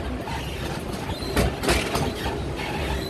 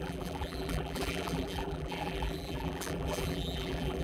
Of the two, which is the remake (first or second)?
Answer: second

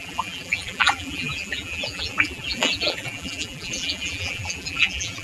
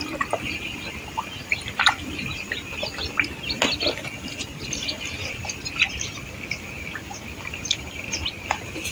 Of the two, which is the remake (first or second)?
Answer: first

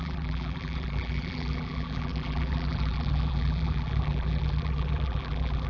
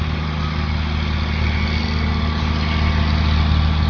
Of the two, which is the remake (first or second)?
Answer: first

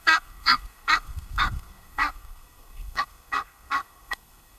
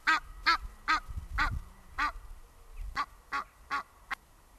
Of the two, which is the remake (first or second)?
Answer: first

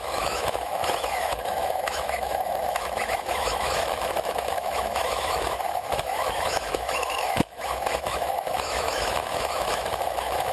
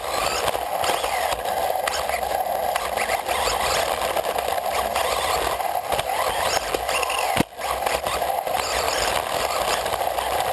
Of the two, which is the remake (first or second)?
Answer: first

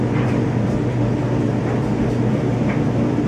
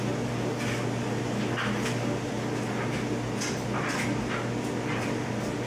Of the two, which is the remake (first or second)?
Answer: first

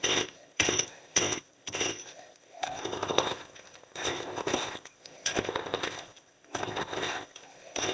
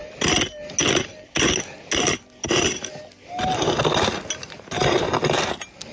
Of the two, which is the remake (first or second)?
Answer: first